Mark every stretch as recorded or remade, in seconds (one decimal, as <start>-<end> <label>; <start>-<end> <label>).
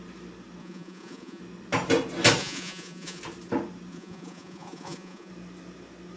0.0-0.6 recorded; 0.6-1.4 remade; 1.4-2.4 recorded; 2.4-3.2 remade; 3.2-3.9 recorded; 3.9-5.3 remade; 5.3-6.2 recorded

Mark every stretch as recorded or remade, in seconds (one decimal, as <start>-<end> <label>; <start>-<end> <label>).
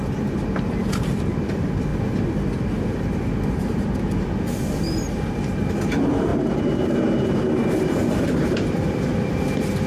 0.0-1.9 remade; 1.9-3.6 recorded; 3.6-9.9 remade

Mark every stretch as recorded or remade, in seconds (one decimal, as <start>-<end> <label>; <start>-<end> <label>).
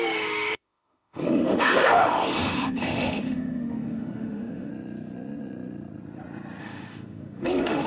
0.0-4.7 remade; 4.7-6.6 recorded; 6.6-7.9 remade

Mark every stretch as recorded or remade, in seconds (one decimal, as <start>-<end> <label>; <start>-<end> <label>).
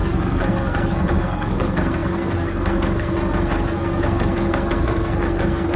0.0-5.8 remade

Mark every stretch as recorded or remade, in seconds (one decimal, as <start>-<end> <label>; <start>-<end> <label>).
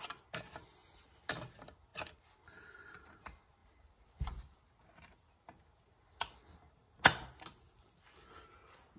0.0-0.8 recorded; 0.8-1.3 remade; 1.3-3.6 recorded; 3.6-4.6 remade; 4.6-9.0 recorded